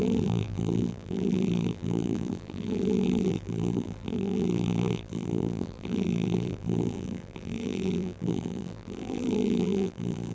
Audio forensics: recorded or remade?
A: remade